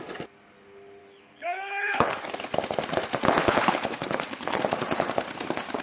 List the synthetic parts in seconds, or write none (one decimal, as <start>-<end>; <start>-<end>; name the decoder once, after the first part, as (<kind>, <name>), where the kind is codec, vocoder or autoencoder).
1.0-2.3 (codec, HILCodec); 3.4-4.6